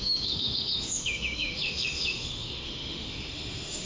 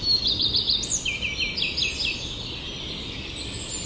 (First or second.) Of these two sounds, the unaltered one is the second